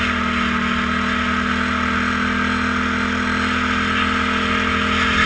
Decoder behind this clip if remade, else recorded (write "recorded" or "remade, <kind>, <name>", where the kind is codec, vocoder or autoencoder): recorded